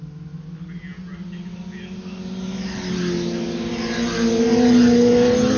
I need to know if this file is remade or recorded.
recorded